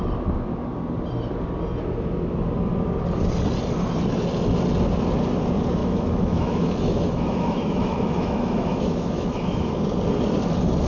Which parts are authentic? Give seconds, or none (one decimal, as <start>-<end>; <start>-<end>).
0.0-5.8; 9.7-10.9